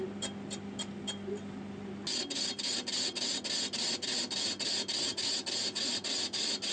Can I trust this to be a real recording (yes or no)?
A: yes